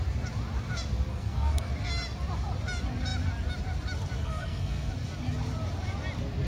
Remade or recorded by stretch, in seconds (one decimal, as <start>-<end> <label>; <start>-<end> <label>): 0.0-1.1 recorded; 1.1-1.7 remade; 1.7-4.2 recorded; 4.2-4.9 remade; 4.9-6.5 recorded